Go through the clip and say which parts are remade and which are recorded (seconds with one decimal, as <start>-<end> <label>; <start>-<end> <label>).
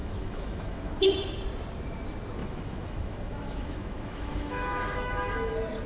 0.0-1.1 remade; 1.1-2.4 recorded; 2.4-5.5 remade; 5.5-5.9 recorded